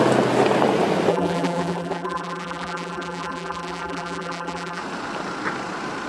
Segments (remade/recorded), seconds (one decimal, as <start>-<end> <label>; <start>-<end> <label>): 0.0-1.1 recorded; 1.1-4.8 remade; 4.8-6.1 recorded